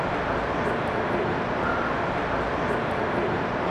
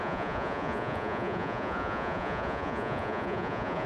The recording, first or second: first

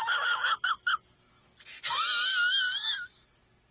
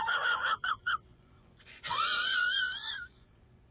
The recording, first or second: first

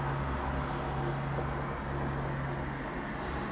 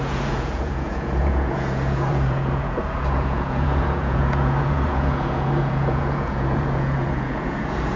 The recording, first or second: first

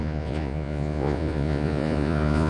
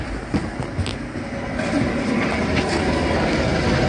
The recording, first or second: second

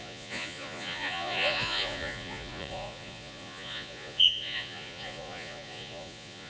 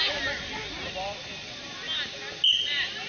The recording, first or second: second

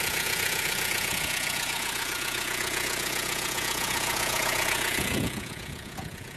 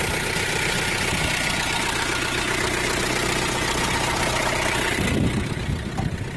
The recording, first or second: second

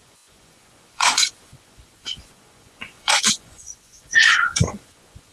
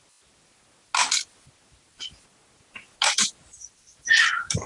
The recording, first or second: second